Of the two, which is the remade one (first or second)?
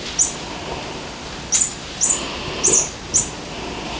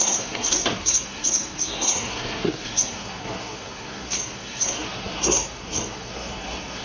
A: second